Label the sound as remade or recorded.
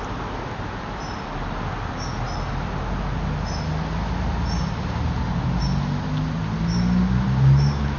recorded